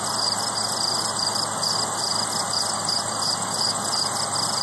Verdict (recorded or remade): recorded